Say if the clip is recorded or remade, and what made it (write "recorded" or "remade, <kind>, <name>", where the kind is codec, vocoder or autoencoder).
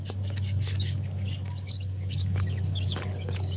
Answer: remade, codec, DAC